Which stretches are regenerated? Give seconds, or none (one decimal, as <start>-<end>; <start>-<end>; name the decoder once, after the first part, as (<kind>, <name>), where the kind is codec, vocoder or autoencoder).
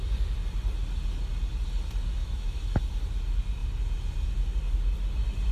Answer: 2.2-2.7 (autoencoder, DAC-VAE)